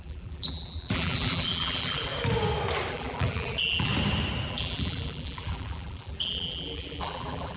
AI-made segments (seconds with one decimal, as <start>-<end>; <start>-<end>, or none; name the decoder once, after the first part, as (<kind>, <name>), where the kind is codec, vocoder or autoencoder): 0.0-2.1 (vocoder, BigVGAN v2); 2.9-3.9; 4.5-7.6